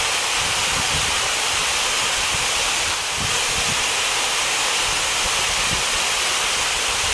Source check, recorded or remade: recorded